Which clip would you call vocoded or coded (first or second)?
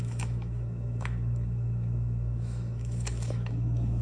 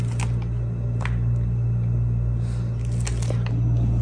first